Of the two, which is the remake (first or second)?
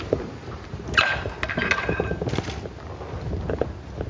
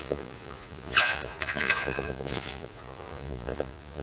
second